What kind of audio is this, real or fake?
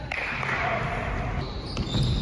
real